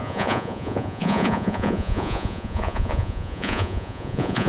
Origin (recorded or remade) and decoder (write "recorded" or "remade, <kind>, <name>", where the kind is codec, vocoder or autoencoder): remade, vocoder, Vocos